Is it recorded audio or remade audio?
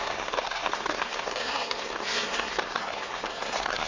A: remade